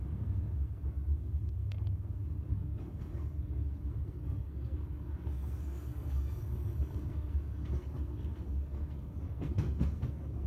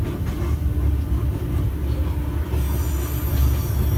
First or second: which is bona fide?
second